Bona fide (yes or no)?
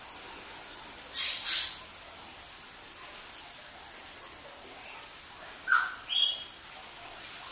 yes